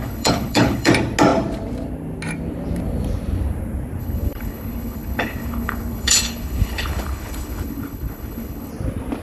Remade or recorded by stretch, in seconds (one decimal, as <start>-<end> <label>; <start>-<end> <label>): 0.0-0.9 remade; 0.9-4.0 recorded; 4.0-8.7 remade; 8.7-9.2 recorded